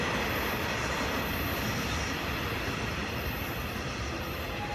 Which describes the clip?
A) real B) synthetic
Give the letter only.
A